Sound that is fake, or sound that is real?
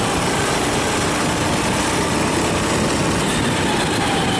real